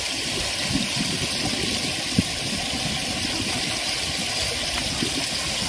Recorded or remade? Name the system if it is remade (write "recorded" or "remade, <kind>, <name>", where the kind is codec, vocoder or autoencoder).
recorded